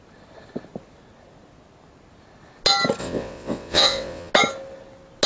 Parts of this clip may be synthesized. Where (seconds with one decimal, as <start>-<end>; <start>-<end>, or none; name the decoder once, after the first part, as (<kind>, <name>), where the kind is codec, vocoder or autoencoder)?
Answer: 3.0-4.3 (vocoder, WaveNeXt)